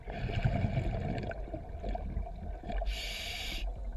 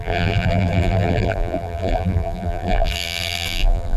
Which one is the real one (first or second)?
first